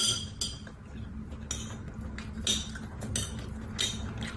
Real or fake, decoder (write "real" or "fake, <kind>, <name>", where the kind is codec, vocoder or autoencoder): real